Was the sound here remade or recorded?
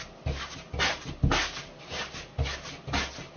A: recorded